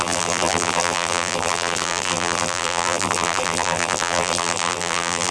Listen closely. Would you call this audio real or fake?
fake